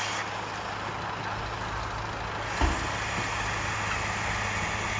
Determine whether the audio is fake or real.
real